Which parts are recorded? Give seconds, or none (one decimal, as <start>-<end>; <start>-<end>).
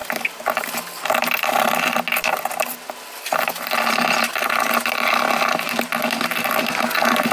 0.0-7.3